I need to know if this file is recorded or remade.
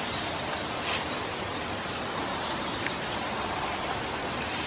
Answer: recorded